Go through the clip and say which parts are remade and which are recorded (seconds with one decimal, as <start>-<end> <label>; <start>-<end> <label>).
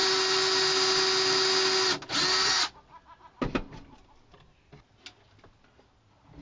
0.0-6.4 recorded